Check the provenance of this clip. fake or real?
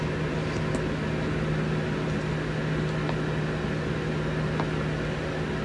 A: real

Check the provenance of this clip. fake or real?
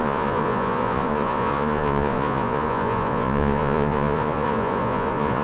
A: fake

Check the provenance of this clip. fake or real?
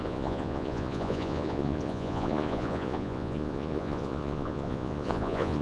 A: fake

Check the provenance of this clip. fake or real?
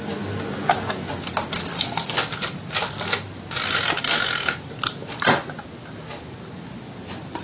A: real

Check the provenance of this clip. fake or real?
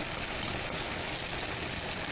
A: real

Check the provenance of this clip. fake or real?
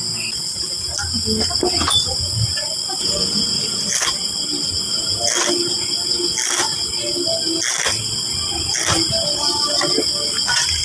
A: real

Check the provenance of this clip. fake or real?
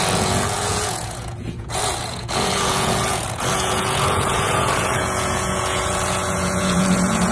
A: fake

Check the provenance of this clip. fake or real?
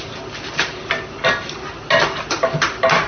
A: real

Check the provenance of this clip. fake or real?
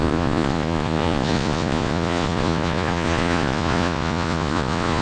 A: fake